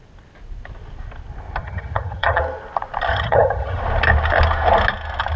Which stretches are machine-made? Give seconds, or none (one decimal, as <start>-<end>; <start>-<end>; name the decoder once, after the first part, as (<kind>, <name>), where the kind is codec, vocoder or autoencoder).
1.6-2.4 (vocoder, HiFi-GAN); 3.1-3.8

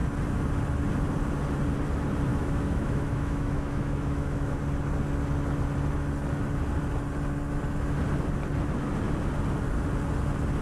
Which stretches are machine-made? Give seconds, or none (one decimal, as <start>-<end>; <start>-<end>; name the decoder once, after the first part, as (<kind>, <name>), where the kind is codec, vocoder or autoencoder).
2.3-4.6 (autoencoder, DAC-VAE)

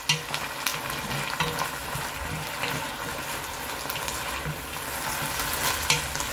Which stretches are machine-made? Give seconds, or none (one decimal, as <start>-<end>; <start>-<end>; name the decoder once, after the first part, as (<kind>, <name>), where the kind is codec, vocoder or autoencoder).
none

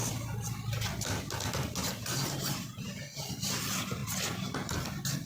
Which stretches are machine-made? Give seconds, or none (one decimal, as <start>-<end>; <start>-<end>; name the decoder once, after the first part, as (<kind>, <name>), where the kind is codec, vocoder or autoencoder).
1.8-2.8 (vocoder, BigVGAN v2)